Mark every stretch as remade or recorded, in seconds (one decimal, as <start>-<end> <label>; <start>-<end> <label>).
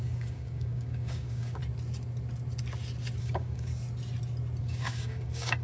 0.0-1.6 remade; 1.6-3.2 recorded; 3.2-3.7 remade; 3.7-4.6 recorded; 4.6-5.6 remade